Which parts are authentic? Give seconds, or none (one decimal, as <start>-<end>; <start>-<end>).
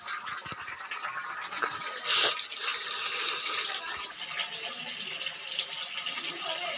0.0-6.8